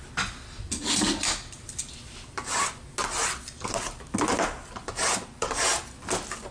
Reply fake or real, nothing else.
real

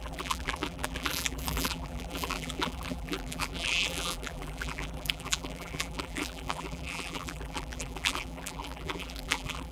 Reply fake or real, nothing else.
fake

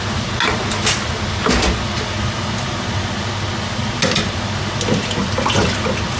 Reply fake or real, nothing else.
real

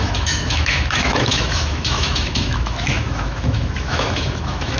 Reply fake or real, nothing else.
fake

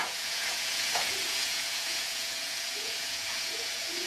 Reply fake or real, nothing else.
fake